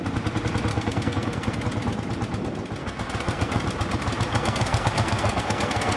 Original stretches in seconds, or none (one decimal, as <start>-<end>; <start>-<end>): 0.0-0.7; 1.6-2.8; 3.6-4.3